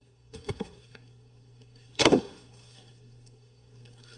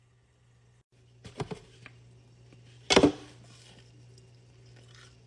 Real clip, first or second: second